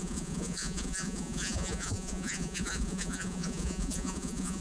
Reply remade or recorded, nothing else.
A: remade